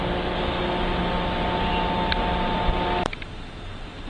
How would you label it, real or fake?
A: real